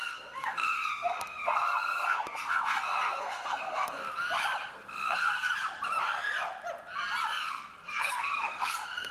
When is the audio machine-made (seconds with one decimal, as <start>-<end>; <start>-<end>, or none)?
0.0-4.0; 4.7-5.5; 7.5-9.1